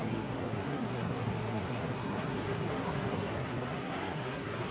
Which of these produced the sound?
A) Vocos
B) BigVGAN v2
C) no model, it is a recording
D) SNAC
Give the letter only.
D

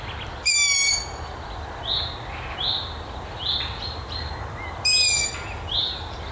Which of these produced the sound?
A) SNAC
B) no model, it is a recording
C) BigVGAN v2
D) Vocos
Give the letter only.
B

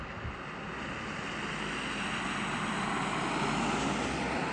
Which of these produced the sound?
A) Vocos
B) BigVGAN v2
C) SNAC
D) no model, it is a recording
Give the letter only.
D